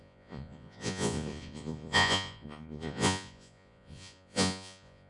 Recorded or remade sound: remade